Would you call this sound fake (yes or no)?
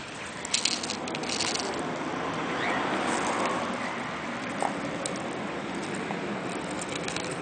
no